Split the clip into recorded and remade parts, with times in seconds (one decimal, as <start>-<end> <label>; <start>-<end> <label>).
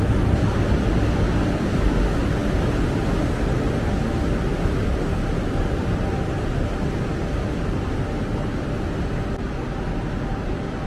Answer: 0.0-10.9 recorded